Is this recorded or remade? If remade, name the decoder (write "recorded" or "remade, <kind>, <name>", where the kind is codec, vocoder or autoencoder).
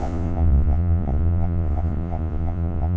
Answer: remade, vocoder, Vocos